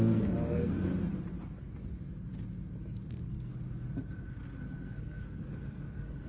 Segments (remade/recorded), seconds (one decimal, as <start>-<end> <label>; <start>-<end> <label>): 0.0-0.9 remade; 0.9-3.1 recorded; 3.1-3.5 remade; 3.5-4.6 recorded; 4.6-6.3 remade